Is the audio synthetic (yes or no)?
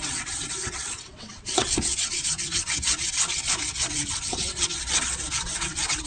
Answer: yes